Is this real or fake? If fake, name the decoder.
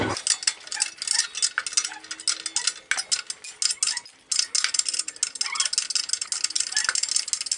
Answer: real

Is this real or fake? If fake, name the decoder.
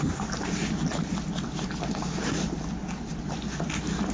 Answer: real